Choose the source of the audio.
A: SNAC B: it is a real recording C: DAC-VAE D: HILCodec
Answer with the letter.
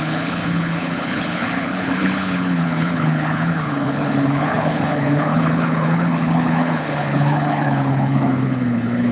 D